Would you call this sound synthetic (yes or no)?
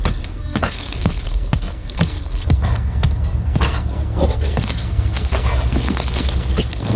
yes